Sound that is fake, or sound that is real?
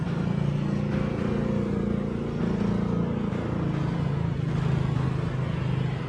real